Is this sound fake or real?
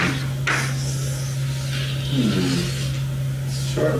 real